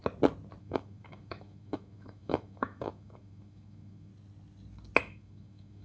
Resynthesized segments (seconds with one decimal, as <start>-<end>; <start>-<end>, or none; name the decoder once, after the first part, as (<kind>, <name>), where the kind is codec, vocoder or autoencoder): 0.6-4.1 (autoencoder, DAC-VAE); 5.0-5.8